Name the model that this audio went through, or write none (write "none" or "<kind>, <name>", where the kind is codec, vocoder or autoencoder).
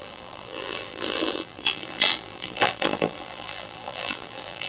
vocoder, BigVGAN v2